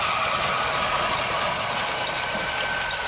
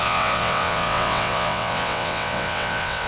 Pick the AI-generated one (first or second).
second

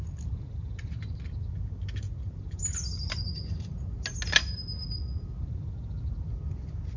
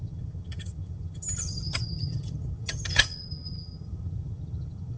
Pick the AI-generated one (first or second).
second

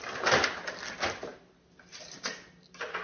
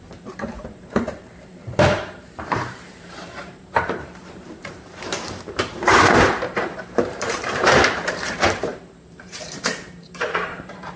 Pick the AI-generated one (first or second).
second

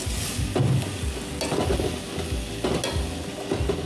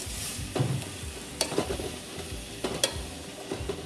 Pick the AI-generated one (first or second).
second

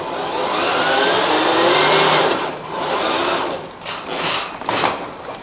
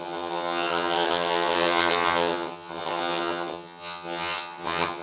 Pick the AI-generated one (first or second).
second